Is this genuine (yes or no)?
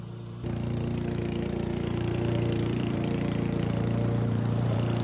no